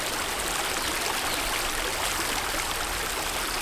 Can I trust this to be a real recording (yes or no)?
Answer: yes